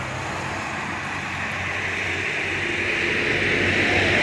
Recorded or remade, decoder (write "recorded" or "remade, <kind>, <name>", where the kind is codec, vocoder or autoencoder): recorded